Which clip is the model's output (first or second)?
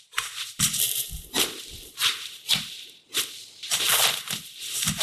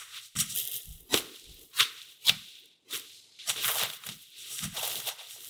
first